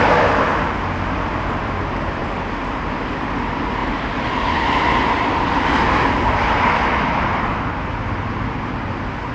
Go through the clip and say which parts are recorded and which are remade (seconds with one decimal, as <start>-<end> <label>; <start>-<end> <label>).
0.0-1.6 recorded; 1.6-2.2 remade; 2.2-3.8 recorded; 3.8-7.8 remade; 7.8-9.3 recorded